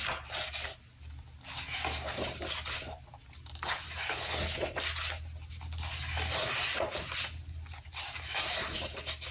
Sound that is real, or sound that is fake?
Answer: real